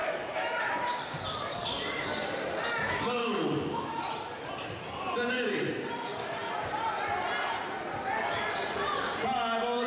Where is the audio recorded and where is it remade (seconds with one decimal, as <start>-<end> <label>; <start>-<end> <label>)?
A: 0.0-0.9 remade; 0.9-3.2 recorded; 3.2-4.0 remade; 4.0-9.9 recorded